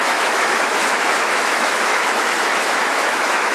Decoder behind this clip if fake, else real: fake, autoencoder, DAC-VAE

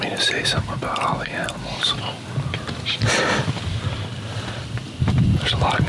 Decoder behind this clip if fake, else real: fake, vocoder, BigVGAN v2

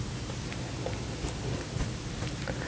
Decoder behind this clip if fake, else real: real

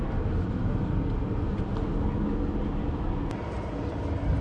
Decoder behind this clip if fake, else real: real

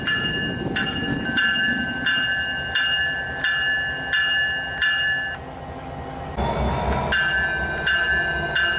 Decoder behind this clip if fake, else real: real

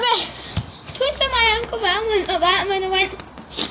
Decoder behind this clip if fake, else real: real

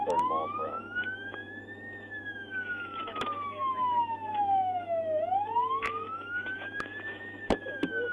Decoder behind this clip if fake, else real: fake, autoencoder, DAC-VAE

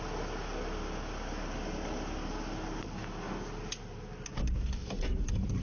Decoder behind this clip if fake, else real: real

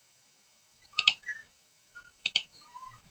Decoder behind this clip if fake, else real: fake, autoencoder, DAC-VAE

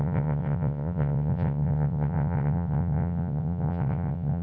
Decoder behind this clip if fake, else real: fake, vocoder, WaveNeXt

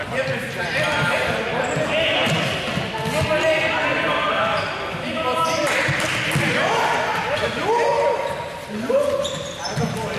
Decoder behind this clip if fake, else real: real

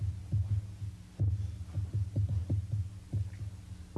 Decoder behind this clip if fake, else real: real